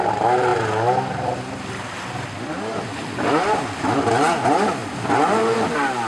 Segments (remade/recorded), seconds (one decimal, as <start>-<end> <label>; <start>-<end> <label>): 0.0-6.1 recorded